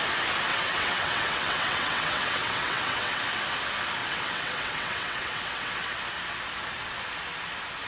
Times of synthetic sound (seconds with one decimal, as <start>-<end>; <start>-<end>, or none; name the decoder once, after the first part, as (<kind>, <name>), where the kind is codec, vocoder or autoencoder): 0.5-3.2 (vocoder, WaveNeXt); 4.0-6.0